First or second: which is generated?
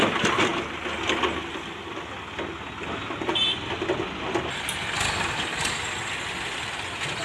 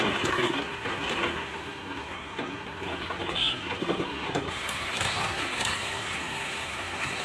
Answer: second